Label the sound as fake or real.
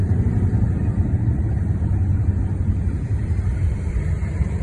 fake